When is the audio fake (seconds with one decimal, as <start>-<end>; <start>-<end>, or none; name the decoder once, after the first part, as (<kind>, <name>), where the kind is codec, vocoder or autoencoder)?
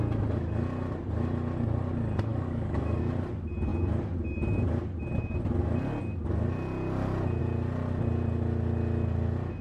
2.3-3.0 (codec, DAC)